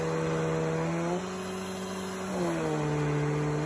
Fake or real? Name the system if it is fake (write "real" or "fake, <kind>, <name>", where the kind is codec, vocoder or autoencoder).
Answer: real